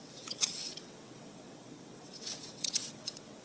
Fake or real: fake